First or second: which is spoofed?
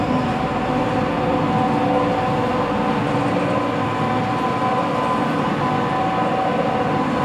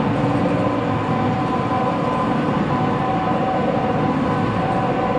second